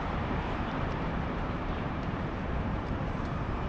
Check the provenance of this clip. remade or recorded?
remade